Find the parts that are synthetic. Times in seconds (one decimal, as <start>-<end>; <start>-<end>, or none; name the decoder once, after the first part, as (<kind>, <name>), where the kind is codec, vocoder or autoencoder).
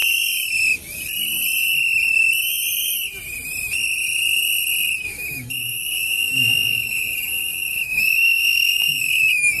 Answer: 5.1-9.6 (autoencoder, DAC-VAE)